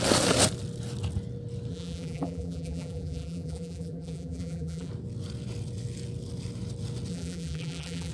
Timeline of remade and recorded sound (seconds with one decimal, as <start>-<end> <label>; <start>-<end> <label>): 0.0-1.7 recorded; 1.7-4.9 remade; 4.9-7.1 recorded; 7.1-8.1 remade